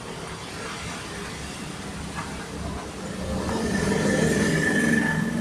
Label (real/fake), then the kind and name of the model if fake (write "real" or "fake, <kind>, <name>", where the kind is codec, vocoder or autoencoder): real